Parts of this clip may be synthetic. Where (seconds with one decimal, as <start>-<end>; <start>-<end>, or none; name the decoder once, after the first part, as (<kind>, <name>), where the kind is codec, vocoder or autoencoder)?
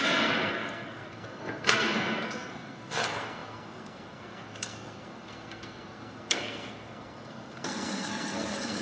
0.0-8.8 (codec, SNAC)